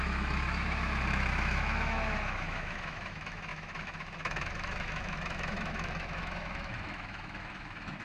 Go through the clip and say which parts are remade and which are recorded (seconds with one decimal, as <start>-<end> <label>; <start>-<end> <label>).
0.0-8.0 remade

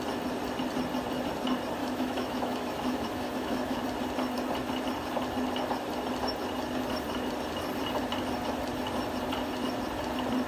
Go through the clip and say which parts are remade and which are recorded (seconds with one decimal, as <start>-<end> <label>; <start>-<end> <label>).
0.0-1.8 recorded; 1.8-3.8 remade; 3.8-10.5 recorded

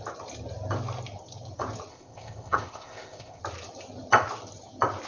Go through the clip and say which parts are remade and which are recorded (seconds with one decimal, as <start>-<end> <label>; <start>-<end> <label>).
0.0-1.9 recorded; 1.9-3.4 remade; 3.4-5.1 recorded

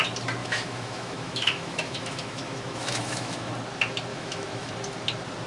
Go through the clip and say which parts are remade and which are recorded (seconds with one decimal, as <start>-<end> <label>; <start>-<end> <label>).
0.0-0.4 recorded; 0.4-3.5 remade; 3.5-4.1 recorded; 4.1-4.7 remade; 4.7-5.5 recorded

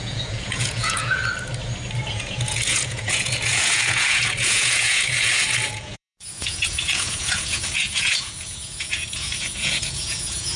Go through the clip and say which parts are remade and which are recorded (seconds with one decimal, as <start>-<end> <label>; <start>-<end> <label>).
0.0-1.2 remade; 1.2-2.1 recorded; 2.1-10.6 remade

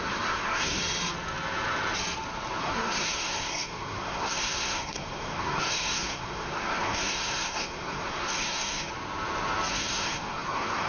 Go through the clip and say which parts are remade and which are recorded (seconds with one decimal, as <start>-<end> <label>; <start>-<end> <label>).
0.0-0.8 remade; 0.8-2.6 recorded; 2.6-8.9 remade; 8.9-9.7 recorded; 9.7-10.9 remade

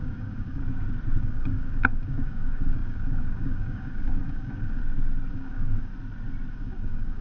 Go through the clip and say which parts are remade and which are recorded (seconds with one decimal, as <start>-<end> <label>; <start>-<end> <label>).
0.0-0.6 remade; 0.6-1.2 recorded; 1.2-4.8 remade; 4.8-5.3 recorded; 5.3-5.9 remade; 5.9-6.5 recorded; 6.5-7.2 remade

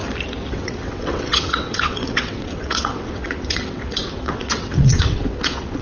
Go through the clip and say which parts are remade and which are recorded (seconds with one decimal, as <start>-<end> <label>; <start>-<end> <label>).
0.0-0.5 recorded; 0.5-5.8 remade